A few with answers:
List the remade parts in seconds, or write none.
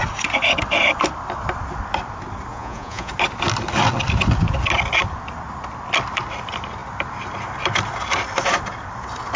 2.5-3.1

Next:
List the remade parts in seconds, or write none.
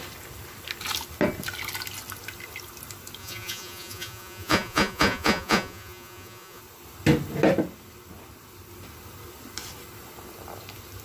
3.2-6.6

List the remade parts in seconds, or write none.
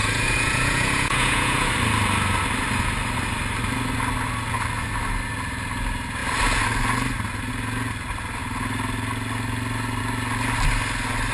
0.0-1.7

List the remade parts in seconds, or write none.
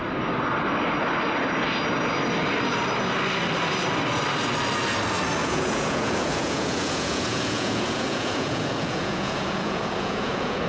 5.4-10.7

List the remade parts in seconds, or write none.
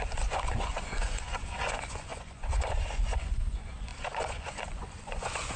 0.0-5.6